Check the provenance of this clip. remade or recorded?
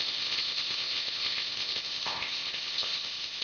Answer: remade